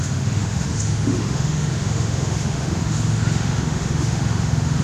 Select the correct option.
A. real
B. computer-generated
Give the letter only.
B